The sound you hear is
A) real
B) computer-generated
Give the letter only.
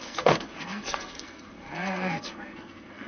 B